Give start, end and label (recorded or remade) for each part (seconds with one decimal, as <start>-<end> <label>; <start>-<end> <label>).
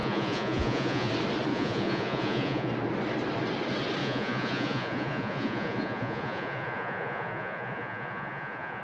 0.0-1.1 remade; 1.1-1.5 recorded; 1.5-2.7 remade; 2.7-4.0 recorded; 4.0-8.8 remade